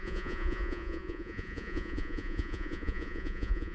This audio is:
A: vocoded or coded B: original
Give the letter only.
A